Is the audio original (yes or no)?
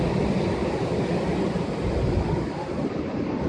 yes